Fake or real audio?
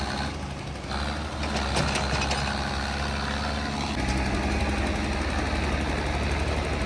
real